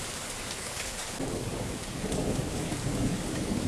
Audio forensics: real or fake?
fake